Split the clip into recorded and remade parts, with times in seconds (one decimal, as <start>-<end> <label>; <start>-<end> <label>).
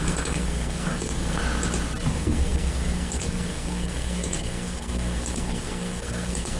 0.0-1.4 remade; 1.4-2.1 recorded; 2.1-6.6 remade